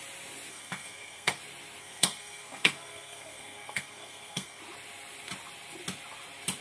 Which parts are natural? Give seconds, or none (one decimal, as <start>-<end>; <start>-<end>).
0.0-0.5; 1.4-1.8; 4.6-6.6